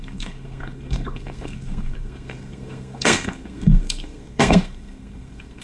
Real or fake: fake